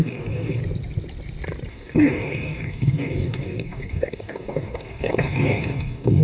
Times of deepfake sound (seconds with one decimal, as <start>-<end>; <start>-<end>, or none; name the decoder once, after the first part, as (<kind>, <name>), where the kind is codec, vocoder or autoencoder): 0.0-0.6 (codec, DAC); 1.7-6.2